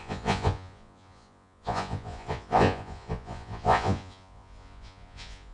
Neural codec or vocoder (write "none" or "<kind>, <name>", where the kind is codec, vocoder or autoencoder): vocoder, Vocos